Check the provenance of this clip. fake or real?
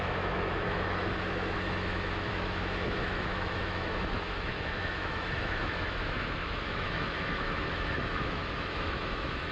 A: fake